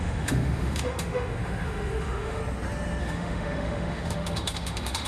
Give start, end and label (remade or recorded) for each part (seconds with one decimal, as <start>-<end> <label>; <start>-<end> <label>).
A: 0.0-2.4 remade; 2.4-3.0 recorded; 3.0-5.1 remade